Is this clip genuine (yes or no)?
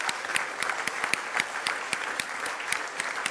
yes